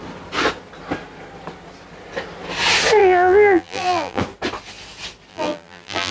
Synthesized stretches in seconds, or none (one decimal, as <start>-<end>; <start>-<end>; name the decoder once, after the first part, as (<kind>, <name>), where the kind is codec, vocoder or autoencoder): 3.0-4.2 (vocoder, BigVGAN v2); 5.3-6.1